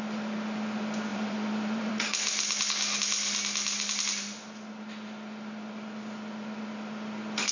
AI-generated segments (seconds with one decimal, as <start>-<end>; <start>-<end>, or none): 1.1-1.9